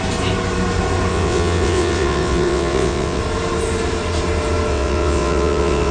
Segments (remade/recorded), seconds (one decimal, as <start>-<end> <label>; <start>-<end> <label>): 0.0-1.1 recorded; 1.1-3.2 remade; 3.2-4.7 recorded; 4.7-5.9 remade